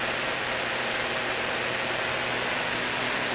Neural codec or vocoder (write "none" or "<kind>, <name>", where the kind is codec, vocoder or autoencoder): none